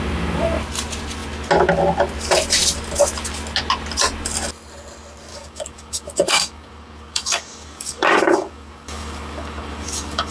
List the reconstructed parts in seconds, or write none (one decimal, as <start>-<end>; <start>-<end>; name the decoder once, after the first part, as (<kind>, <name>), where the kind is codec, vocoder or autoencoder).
5.3-10.3 (codec, DAC)